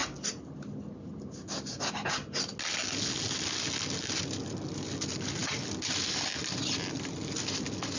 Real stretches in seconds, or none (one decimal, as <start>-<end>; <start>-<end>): 0.0-8.0